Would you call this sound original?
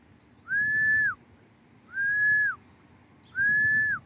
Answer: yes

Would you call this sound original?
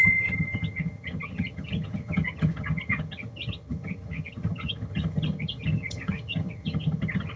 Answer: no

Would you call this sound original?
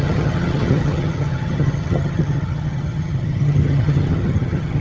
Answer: no